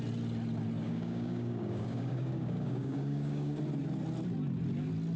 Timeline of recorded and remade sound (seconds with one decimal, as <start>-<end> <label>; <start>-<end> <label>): 0.0-0.8 recorded; 0.8-3.6 remade; 3.6-5.2 recorded